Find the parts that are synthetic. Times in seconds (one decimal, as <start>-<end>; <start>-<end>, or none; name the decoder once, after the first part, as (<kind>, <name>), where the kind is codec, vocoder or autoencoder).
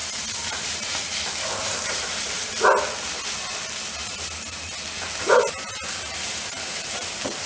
0.5-0.9 (vocoder, BigVGAN v2); 1.6-2.5; 5.3-7.5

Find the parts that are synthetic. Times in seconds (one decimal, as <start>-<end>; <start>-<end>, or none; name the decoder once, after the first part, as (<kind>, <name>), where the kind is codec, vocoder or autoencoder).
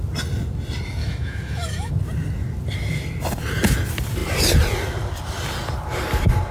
1.0-1.9 (autoencoder, DAC-VAE)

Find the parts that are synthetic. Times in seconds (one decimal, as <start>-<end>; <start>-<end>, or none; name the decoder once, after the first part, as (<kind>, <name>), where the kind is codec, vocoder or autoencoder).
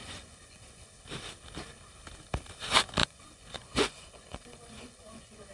0.0-0.9 (vocoder, Vocos); 3.0-5.5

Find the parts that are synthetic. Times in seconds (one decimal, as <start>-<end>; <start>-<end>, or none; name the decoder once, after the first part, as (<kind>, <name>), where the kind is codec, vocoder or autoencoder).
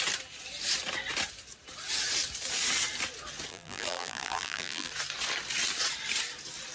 3.5-4.9 (vocoder, BigVGAN v2)